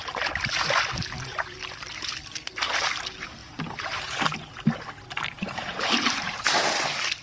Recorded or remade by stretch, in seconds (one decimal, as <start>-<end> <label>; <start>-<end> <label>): 0.0-3.4 recorded; 3.4-4.2 remade; 4.2-5.3 recorded; 5.3-6.6 remade; 6.6-7.2 recorded